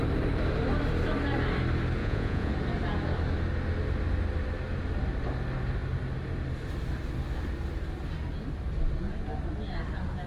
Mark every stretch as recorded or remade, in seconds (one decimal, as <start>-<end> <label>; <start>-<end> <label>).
0.0-2.0 recorded; 2.0-2.5 remade; 2.5-10.3 recorded